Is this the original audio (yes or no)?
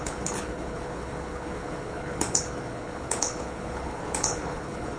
no